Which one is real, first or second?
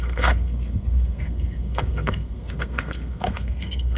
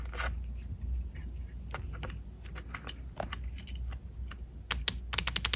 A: second